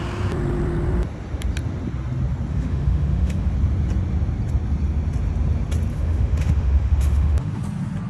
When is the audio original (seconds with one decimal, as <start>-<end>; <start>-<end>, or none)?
0.0-2.5; 3.5-5.9; 7.6-8.1